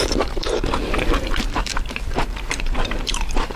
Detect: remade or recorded remade